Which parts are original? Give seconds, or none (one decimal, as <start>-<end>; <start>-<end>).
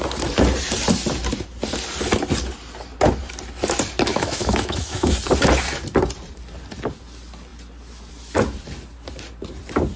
0.0-4.1; 5.1-10.0